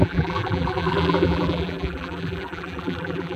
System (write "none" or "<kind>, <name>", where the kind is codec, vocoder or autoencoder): vocoder, BigVGAN v2